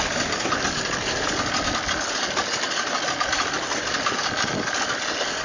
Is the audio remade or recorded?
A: recorded